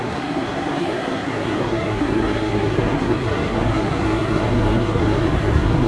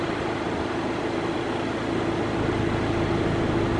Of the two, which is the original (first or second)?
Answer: second